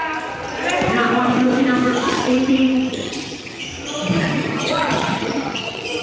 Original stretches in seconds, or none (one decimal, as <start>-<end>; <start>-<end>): 0.0-2.1; 3.7-4.2